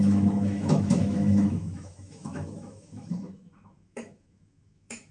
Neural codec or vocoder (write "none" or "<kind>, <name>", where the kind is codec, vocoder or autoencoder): autoencoder, DAC-VAE